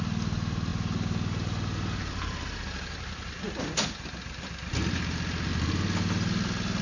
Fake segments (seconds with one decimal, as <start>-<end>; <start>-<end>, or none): none